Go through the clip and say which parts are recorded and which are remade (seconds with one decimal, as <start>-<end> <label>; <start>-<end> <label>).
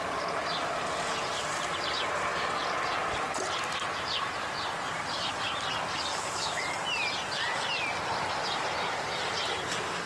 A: 0.0-6.1 recorded; 6.1-6.6 remade; 6.6-10.1 recorded